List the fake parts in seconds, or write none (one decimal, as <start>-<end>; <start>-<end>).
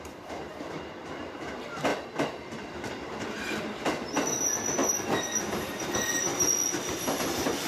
0.0-1.9; 2.6-6.3